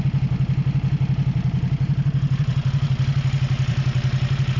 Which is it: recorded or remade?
recorded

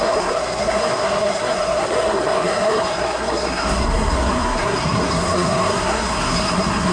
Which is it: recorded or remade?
remade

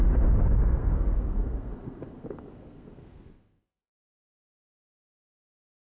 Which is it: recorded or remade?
remade